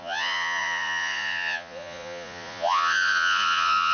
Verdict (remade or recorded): remade